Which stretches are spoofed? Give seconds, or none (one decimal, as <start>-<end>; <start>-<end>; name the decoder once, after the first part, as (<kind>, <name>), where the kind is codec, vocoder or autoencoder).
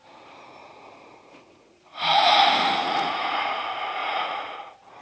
0.6-2.4 (vocoder, Vocos); 2.8-3.6; 4.0-5.0